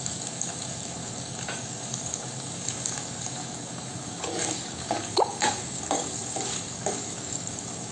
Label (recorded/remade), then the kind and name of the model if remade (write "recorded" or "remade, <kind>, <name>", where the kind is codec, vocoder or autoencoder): remade, codec, DAC